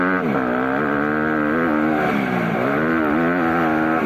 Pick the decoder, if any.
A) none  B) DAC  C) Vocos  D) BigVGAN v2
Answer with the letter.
A